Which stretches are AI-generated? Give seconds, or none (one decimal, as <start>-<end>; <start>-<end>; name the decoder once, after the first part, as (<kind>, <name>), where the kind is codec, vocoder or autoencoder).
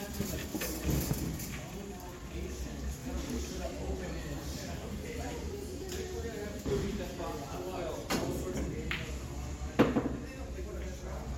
3.0-7.0 (vocoder, BigVGAN v2)